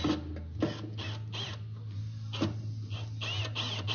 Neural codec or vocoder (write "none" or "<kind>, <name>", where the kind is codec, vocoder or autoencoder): none